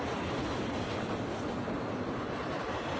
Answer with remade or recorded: recorded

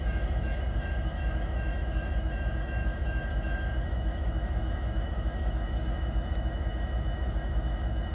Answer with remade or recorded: remade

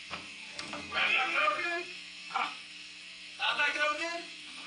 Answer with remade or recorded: remade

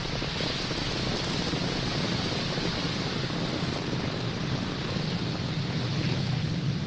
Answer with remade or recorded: recorded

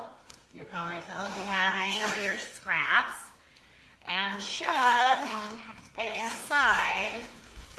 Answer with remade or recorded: remade